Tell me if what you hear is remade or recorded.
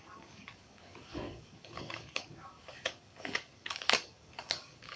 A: remade